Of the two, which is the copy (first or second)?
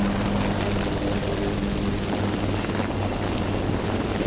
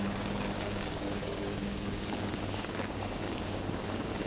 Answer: second